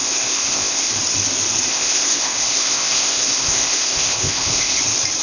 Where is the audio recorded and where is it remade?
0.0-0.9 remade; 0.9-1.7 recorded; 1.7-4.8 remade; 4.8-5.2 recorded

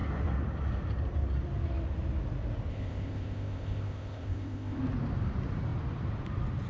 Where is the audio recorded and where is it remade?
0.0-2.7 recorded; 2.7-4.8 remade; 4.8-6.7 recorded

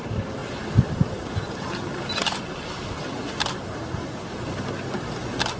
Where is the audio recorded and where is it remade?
0.0-5.6 recorded